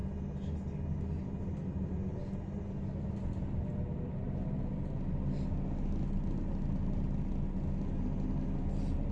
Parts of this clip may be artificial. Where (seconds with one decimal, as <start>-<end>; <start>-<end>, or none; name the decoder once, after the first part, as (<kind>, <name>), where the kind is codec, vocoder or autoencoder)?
none